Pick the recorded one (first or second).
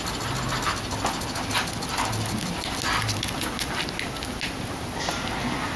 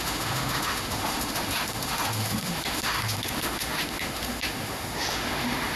first